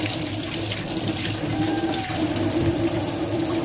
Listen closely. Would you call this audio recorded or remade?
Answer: remade